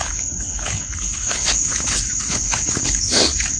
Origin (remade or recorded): remade